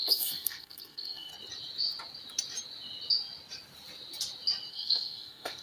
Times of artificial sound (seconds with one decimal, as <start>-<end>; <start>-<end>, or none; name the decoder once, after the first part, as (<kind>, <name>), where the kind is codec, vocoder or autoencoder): 0.0-1.3 (codec, SNAC); 4.7-5.6